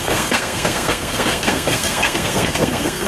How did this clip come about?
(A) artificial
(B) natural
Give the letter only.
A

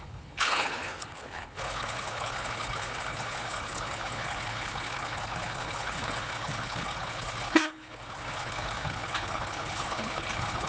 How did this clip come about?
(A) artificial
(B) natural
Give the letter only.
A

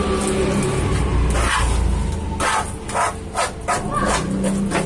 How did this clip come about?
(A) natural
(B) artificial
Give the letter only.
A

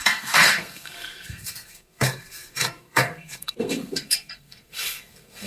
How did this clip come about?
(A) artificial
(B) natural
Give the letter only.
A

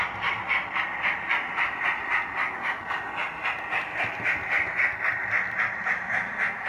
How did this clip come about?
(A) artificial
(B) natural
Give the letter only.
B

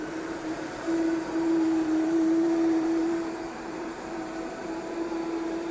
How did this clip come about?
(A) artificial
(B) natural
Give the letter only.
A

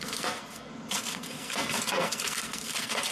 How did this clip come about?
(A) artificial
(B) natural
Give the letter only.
A